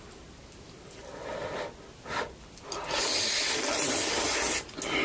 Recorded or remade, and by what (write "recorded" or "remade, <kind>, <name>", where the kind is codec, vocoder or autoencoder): recorded